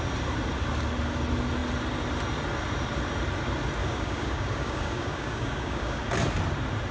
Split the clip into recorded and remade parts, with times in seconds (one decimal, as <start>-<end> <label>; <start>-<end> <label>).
0.0-3.8 recorded; 3.8-6.0 remade; 6.0-6.9 recorded